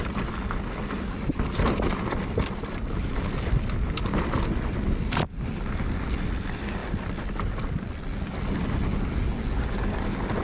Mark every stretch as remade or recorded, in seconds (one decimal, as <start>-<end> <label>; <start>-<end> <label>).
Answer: 0.0-10.4 recorded